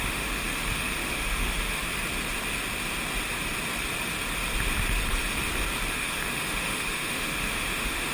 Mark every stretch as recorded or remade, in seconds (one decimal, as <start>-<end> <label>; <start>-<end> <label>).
0.0-1.8 remade; 1.8-5.9 recorded; 5.9-8.1 remade